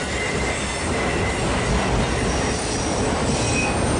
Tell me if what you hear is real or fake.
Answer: real